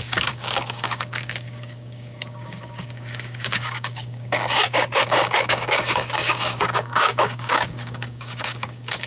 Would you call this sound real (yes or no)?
no